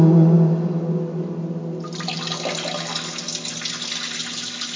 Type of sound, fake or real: real